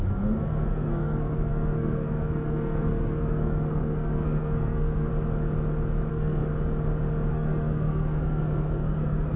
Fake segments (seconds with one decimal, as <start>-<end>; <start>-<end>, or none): 0.0-5.1; 6.1-6.5; 7.3-9.4